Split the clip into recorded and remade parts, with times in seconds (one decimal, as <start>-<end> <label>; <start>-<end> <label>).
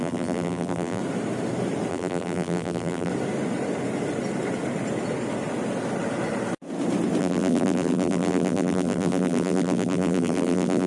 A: 0.0-1.0 remade; 1.0-1.9 recorded; 1.9-3.1 remade; 3.1-7.2 recorded; 7.2-10.9 remade